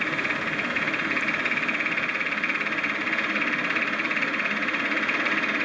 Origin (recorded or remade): recorded